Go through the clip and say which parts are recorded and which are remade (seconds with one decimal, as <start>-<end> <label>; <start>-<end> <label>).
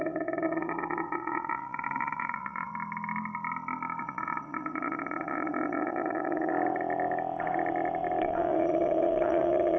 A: 0.0-2.7 remade; 2.7-4.0 recorded; 4.0-6.5 remade; 6.5-8.2 recorded; 8.2-9.8 remade